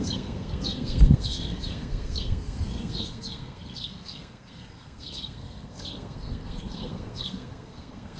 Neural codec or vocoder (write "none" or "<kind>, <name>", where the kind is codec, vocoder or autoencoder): codec, SNAC